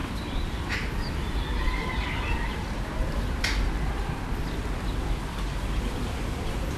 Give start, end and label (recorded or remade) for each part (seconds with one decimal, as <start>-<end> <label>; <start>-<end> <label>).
0.0-6.8 remade